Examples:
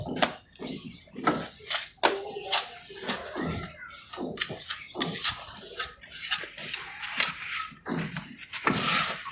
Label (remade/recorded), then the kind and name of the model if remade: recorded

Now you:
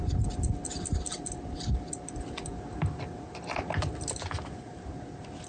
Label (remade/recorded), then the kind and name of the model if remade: recorded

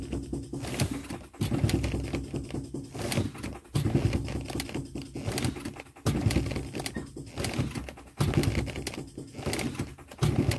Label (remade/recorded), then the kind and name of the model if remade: recorded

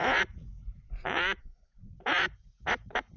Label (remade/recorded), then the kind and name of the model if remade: remade, vocoder, Vocos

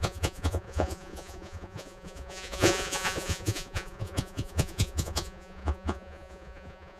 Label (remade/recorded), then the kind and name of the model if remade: remade, vocoder, Vocos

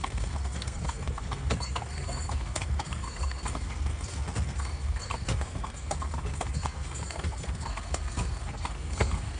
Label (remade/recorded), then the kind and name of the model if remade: remade, codec, SNAC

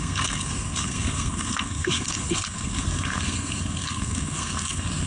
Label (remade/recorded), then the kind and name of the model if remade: remade, codec, SNAC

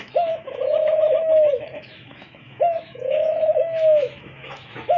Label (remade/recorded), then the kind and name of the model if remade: remade, autoencoder, DAC-VAE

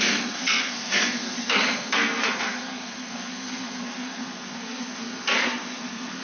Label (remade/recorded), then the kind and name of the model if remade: remade, codec, SNAC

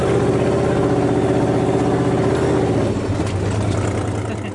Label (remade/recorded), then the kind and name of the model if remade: recorded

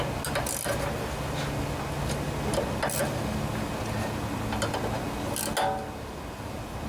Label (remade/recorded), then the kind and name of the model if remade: recorded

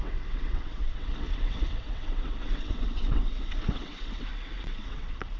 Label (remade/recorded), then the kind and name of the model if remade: remade, vocoder, WaveNeXt